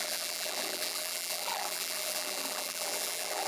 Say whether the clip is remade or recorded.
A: remade